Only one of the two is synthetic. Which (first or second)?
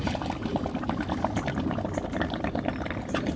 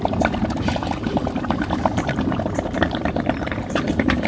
second